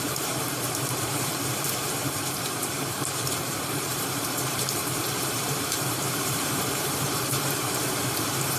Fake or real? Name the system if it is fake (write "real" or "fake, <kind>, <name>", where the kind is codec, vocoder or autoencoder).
fake, vocoder, BigVGAN v2